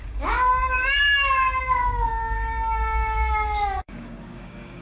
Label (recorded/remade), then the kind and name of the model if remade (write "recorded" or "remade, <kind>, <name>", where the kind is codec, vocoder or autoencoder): remade, codec, DAC